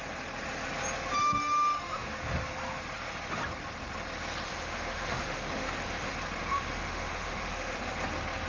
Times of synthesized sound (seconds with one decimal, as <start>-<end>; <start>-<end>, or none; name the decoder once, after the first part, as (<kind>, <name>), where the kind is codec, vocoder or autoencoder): 1.2-2.1 (autoencoder, DAC-VAE); 4.5-6.1; 6.5-7.8